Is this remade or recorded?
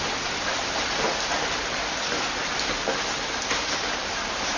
recorded